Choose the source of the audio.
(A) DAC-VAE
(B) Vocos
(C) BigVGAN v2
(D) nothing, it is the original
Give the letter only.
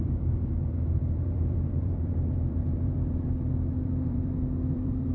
C